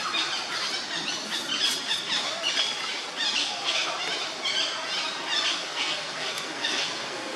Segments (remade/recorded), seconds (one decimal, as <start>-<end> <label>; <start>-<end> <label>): 0.0-3.4 recorded; 3.4-3.9 remade; 3.9-5.5 recorded; 5.5-7.4 remade